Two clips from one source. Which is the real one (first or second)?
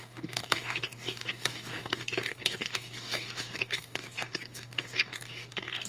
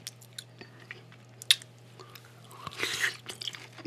second